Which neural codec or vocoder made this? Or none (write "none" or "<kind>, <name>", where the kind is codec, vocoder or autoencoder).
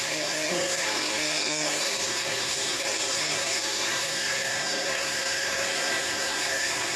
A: codec, SNAC